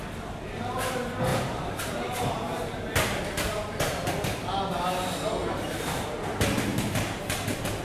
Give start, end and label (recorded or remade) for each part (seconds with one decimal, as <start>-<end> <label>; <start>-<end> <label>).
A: 0.0-1.3 recorded; 1.3-4.1 remade; 4.1-5.4 recorded; 5.4-6.3 remade; 6.3-6.7 recorded; 6.7-7.8 remade